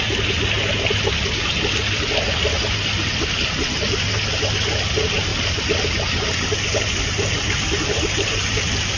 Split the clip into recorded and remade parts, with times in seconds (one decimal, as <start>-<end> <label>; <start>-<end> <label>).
0.0-9.0 recorded